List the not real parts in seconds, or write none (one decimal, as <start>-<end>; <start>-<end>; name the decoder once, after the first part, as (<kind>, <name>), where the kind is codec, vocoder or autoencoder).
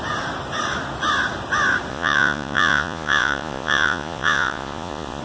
1.9-5.2 (vocoder, Vocos)